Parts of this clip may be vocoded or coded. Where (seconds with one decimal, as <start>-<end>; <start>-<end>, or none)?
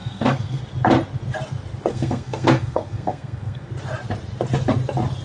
0.0-0.6; 1.9-3.7